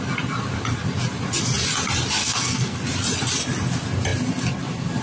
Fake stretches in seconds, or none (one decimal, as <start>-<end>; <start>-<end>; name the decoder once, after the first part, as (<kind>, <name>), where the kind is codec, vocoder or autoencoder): 2.2-2.8 (codec, SNAC)